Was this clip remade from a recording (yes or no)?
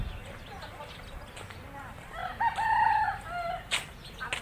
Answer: no